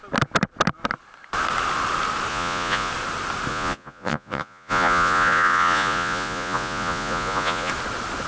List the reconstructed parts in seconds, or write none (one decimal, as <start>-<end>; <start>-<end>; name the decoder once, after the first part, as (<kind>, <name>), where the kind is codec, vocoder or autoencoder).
2.3-2.9 (vocoder, Vocos); 3.5-7.7